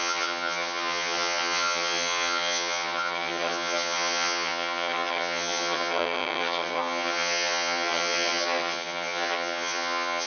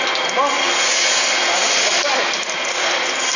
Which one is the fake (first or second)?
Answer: first